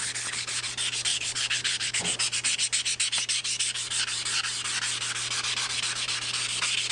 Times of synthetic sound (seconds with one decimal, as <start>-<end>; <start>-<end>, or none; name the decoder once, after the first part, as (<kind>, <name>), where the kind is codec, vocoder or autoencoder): 0.0-0.5 (codec, HILCodec); 1.1-2.0